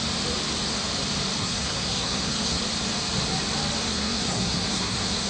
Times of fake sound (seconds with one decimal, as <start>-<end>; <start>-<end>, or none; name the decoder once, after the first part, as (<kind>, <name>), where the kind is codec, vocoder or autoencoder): 1.4-2.6 (codec, SNAC); 3.8-5.3